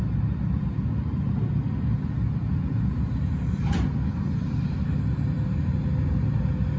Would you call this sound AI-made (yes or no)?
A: no